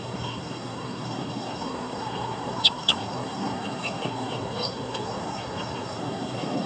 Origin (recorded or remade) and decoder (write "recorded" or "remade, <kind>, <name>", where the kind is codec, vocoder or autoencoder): remade, codec, SNAC